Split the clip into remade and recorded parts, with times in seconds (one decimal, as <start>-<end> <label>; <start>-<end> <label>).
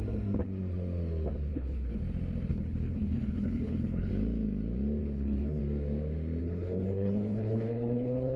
0.0-1.5 recorded; 1.5-2.0 remade; 2.0-2.5 recorded; 2.5-4.1 remade; 4.1-5.0 recorded; 5.0-5.6 remade; 5.6-6.4 recorded; 6.4-8.4 remade